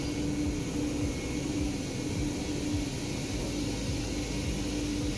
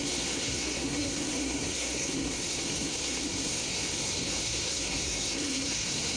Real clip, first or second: first